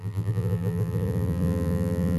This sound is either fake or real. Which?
fake